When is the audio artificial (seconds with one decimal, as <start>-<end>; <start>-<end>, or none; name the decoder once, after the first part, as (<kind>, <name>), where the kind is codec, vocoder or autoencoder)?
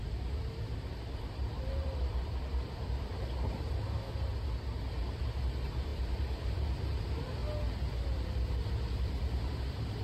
0.0-4.3 (vocoder, BigVGAN v2); 4.9-7.4; 7.9-10.0